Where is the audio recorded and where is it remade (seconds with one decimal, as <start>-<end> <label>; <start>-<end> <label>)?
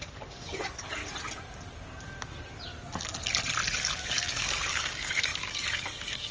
0.0-1.0 remade; 1.0-3.8 recorded; 3.8-6.3 remade